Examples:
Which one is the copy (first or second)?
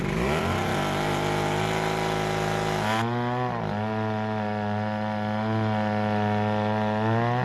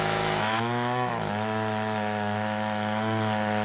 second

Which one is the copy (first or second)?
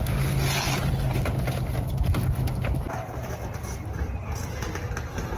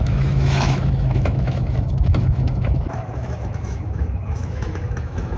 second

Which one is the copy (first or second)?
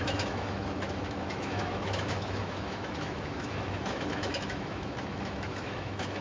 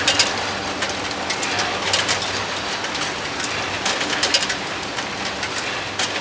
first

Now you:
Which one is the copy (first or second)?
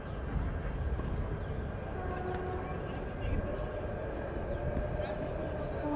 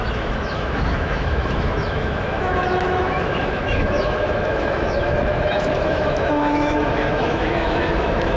second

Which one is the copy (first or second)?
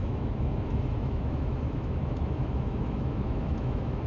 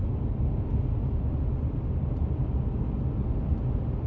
first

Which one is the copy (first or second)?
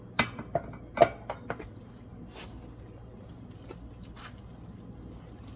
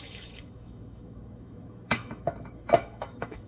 second